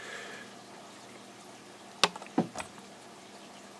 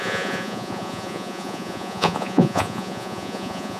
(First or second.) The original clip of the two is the first